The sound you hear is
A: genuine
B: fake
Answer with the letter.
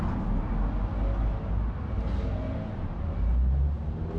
A